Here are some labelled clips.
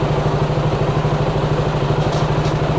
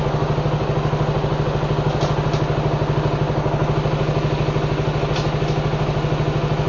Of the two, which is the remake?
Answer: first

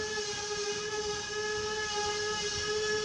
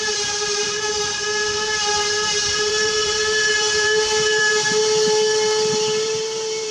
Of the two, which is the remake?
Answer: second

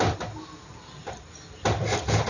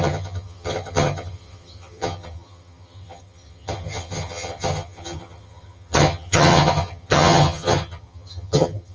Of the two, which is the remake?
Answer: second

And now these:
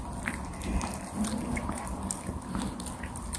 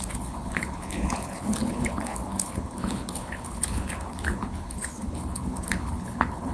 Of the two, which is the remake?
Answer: second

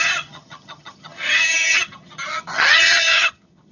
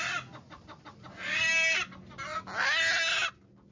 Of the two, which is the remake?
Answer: first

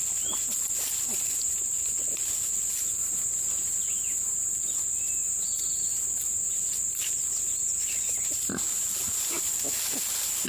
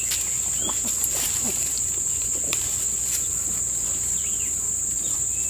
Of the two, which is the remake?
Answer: second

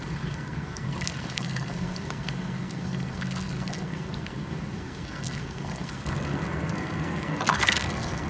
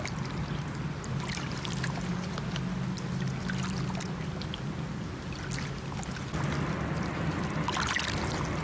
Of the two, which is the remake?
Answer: first